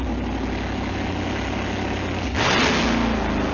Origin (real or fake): real